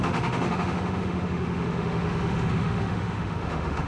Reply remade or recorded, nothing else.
remade